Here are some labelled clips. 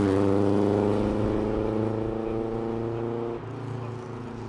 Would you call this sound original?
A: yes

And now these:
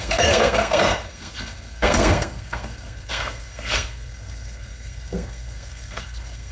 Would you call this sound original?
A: no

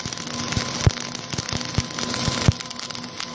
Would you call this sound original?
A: yes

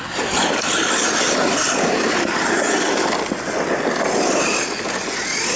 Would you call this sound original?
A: yes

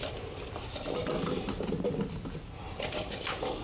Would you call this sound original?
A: yes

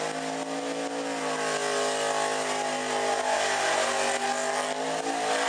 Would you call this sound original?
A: yes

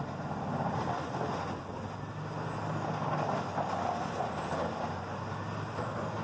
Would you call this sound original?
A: yes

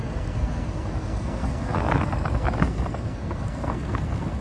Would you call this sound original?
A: no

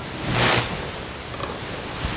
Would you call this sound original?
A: yes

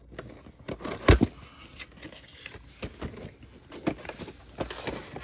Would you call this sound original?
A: yes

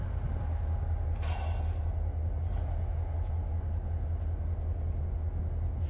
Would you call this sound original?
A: yes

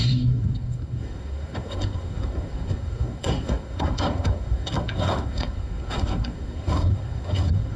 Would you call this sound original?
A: no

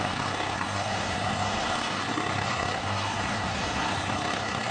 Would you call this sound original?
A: no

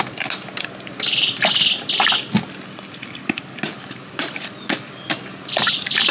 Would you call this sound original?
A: yes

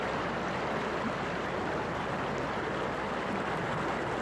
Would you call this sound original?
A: yes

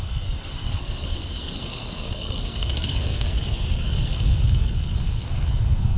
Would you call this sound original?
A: no